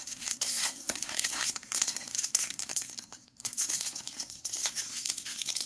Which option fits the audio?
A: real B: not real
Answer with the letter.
B